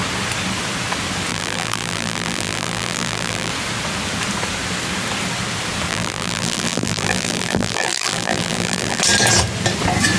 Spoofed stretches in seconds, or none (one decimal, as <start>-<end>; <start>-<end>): 1.3-3.5; 5.9-9.0